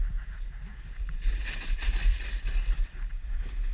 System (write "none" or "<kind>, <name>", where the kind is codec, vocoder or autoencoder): vocoder, BigVGAN v2